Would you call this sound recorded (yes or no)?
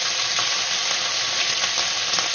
yes